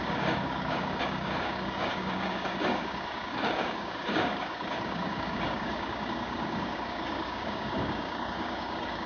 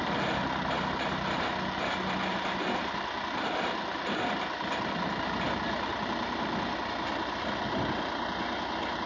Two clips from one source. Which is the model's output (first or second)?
first